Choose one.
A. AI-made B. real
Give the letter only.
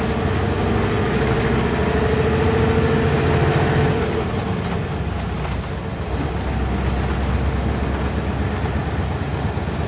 B